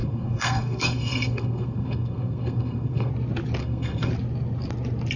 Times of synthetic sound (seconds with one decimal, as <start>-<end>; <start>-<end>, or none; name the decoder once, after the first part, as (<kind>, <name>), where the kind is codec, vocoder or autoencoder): 0.0-3.1 (codec, SNAC); 3.6-4.1